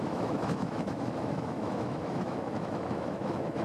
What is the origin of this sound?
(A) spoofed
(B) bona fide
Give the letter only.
A